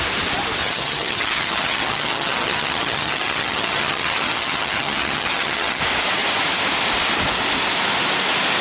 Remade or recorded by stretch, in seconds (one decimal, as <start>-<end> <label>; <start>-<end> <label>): 0.0-0.6 recorded; 0.6-5.8 remade; 5.8-8.6 recorded